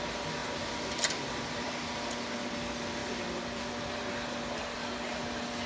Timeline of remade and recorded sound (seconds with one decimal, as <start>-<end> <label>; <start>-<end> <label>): 0.0-0.4 recorded; 0.4-1.9 remade; 1.9-3.0 recorded; 3.0-3.7 remade; 3.7-5.7 recorded